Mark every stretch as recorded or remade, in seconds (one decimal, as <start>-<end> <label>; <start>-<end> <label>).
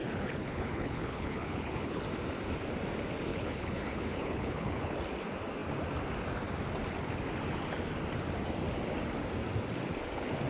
0.0-2.0 remade; 2.0-3.3 recorded; 3.3-5.0 remade; 5.0-10.5 recorded